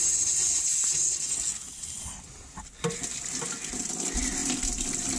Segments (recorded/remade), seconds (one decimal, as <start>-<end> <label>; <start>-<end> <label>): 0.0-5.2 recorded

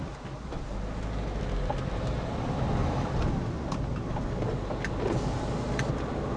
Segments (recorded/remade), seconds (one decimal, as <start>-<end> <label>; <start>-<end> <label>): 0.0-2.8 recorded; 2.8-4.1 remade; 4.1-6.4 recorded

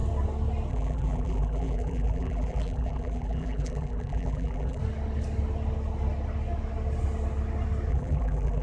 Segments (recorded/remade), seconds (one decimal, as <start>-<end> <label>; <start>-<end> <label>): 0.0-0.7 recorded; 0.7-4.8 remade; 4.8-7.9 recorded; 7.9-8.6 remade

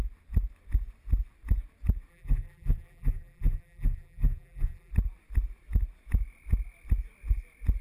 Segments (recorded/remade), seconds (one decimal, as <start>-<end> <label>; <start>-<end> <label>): 0.0-2.1 recorded; 2.1-4.9 remade; 4.9-7.8 recorded

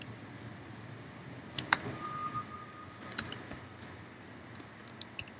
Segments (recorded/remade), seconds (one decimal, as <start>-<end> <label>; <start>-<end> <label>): 0.0-5.4 recorded

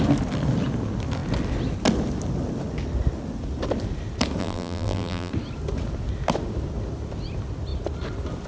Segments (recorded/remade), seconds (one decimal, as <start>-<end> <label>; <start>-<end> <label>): 0.0-4.4 recorded; 4.4-5.3 remade; 5.3-8.5 recorded

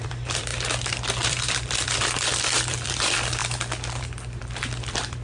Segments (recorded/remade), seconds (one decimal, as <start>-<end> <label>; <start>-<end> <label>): 0.0-0.5 remade; 0.5-1.3 recorded; 1.3-3.4 remade; 3.4-4.0 recorded; 4.0-5.2 remade